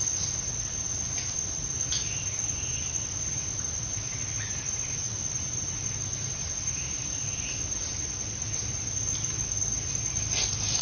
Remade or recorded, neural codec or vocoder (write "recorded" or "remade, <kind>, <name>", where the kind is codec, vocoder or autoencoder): recorded